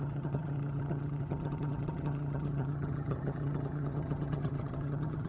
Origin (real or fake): fake